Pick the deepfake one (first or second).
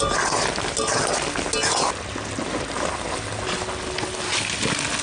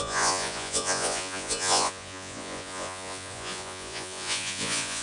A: second